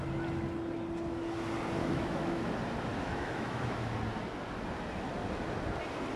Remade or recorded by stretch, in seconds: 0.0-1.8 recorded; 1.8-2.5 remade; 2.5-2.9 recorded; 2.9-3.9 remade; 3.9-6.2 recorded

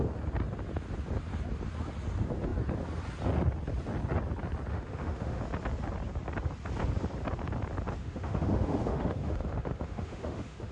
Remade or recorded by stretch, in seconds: 0.0-4.7 recorded; 4.7-5.4 remade; 5.4-8.0 recorded; 8.0-10.7 remade

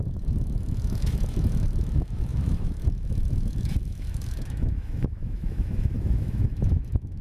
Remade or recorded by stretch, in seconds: 0.0-7.2 remade

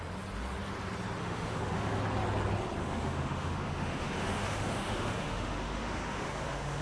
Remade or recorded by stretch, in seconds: 0.0-1.2 recorded; 1.2-2.0 remade; 2.0-2.8 recorded; 2.8-6.8 remade